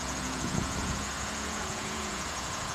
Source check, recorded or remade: remade